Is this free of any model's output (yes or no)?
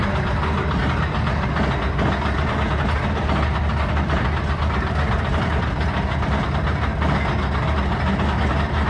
yes